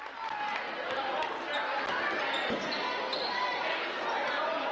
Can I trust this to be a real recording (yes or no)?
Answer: yes